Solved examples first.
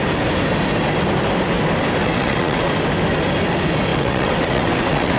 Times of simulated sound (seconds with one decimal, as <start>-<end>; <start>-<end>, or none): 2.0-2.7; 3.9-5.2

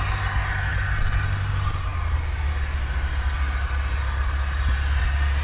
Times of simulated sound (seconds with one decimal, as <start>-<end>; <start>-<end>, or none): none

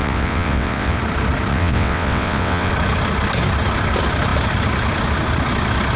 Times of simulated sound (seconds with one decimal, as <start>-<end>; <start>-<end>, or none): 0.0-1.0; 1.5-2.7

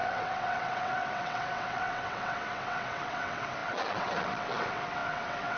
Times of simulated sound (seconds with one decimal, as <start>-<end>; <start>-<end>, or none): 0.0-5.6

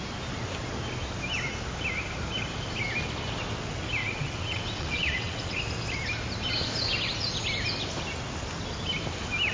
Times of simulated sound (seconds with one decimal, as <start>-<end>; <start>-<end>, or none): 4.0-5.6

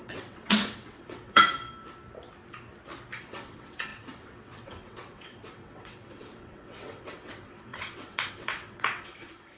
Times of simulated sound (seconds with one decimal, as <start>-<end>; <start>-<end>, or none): 0.0-1.4; 3.2-9.6

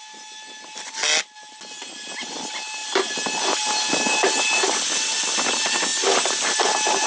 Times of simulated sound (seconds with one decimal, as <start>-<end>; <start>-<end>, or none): none

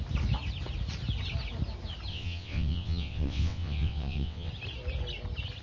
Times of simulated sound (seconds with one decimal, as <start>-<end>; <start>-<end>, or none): 2.1-4.5